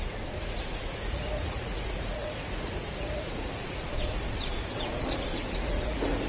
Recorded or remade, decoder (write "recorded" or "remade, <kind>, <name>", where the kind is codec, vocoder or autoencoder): remade, vocoder, Vocos